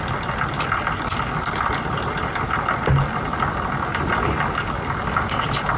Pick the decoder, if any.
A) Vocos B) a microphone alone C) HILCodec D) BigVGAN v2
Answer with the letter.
B